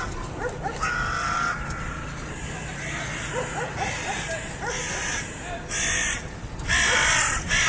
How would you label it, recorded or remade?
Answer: recorded